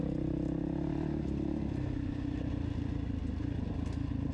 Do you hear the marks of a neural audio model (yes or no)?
no